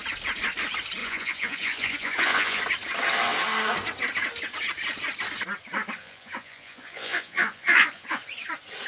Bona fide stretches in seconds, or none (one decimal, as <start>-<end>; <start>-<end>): 0.0-1.0; 2.6-6.0; 8.2-8.9